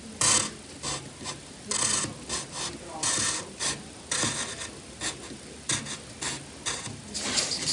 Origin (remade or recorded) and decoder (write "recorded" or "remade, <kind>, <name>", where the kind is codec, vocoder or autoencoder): recorded